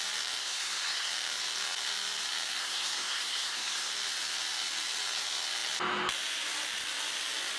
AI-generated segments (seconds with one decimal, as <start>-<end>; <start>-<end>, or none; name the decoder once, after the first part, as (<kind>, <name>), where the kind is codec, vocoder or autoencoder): 0.4-1.1 (codec, SNAC); 2.6-3.9